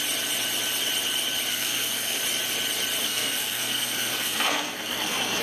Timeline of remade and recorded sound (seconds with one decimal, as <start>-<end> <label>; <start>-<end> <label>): 0.0-1.5 recorded; 1.5-2.2 remade; 2.2-3.0 recorded; 3.0-5.4 remade